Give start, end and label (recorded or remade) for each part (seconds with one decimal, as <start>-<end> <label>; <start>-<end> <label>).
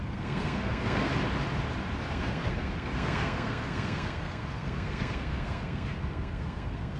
0.0-1.1 remade; 1.1-2.1 recorded; 2.1-7.0 remade